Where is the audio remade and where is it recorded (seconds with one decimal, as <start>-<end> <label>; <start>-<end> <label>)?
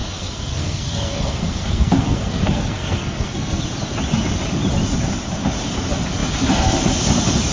0.0-3.6 remade; 3.6-7.5 recorded